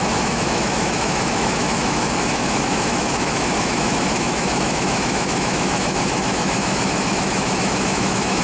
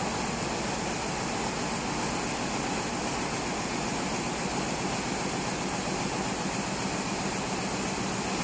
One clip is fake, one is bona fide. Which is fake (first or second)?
first